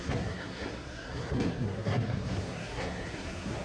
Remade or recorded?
remade